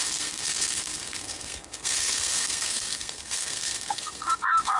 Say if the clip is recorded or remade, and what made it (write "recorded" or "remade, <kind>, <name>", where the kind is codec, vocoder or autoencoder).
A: remade, codec, SNAC